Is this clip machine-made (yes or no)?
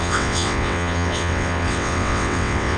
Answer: yes